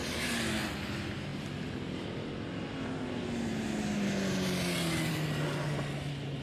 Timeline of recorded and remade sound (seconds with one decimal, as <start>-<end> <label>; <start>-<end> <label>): 0.0-6.4 recorded